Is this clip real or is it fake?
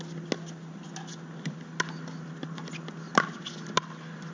real